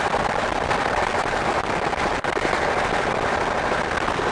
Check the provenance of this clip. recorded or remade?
recorded